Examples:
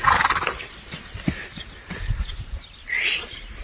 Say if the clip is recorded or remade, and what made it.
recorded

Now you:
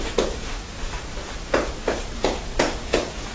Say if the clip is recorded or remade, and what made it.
remade, vocoder, Vocos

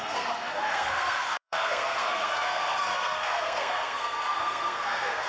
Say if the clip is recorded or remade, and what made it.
remade, codec, SNAC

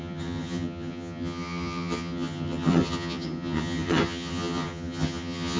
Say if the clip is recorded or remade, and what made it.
remade, vocoder, HiFi-GAN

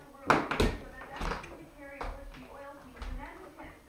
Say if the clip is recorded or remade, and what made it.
recorded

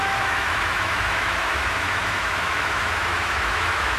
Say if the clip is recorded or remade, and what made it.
remade, autoencoder, DAC-VAE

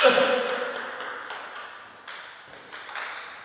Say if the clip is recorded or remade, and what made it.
recorded